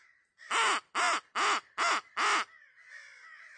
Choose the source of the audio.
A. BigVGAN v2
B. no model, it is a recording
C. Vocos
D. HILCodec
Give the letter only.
B